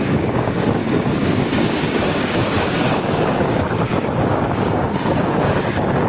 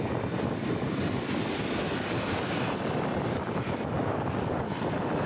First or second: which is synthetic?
first